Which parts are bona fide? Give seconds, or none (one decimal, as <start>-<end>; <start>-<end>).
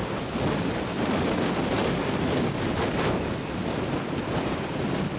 0.0-5.2